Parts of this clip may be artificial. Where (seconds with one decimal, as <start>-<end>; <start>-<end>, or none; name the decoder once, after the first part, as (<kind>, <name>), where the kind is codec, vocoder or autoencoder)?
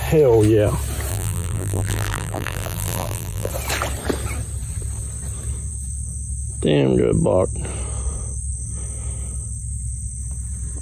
1.1-3.5 (vocoder, BigVGAN v2)